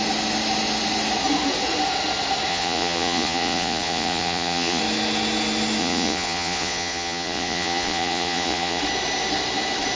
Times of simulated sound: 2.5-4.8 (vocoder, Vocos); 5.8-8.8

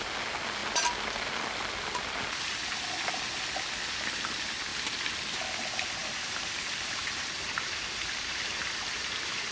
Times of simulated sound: 4.7-5.4 (vocoder, BigVGAN v2); 6.0-9.5